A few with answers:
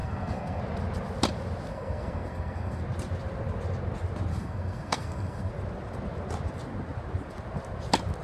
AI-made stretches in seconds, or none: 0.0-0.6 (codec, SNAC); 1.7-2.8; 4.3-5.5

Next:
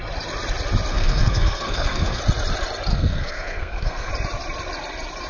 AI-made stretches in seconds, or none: 0.9-2.2 (codec, SNAC); 2.9-4.1

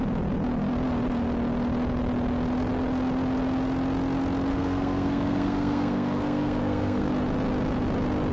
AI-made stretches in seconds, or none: 4.5-7.1 (codec, SNAC)

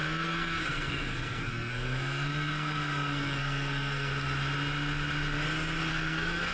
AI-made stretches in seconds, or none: 0.0-4.1 (codec, SNAC); 5.9-6.5

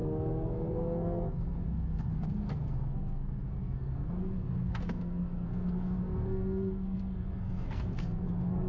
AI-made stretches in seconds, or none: 0.0-8.7 (codec, SNAC)